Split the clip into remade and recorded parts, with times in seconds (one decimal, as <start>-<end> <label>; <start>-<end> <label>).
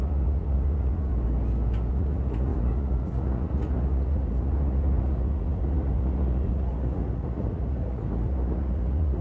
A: 0.0-1.1 remade; 1.1-1.9 recorded; 1.9-9.2 remade